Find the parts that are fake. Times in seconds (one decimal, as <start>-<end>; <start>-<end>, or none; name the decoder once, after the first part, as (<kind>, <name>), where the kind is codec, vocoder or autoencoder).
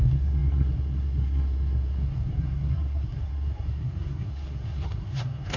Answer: 0.0-5.6 (codec, SNAC)